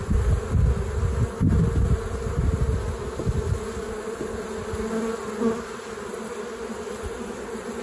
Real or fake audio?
real